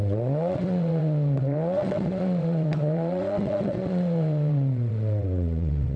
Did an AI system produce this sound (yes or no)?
yes